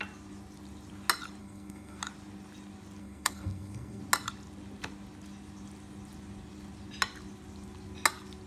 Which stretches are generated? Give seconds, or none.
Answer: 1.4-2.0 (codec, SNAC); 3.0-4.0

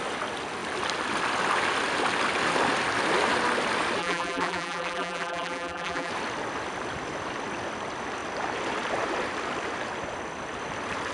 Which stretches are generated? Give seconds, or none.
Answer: 4.0-6.1 (vocoder, BigVGAN v2)

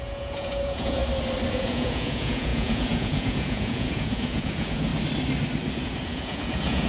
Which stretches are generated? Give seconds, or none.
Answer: 0.0-1.0 (vocoder, Vocos); 1.5-4.9; 5.7-6.9

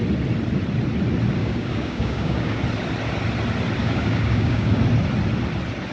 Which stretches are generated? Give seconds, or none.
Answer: 1.4-2.6 (codec, DAC); 3.8-4.8

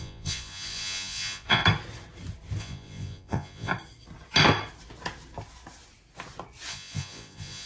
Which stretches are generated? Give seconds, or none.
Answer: 0.0-1.6 (vocoder, Vocos); 2.6-3.7; 6.7-7.7

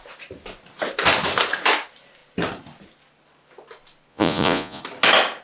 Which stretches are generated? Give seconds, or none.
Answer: 4.1-4.8 (vocoder, Vocos)

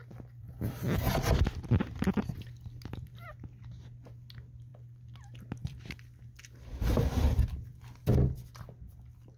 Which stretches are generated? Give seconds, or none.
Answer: none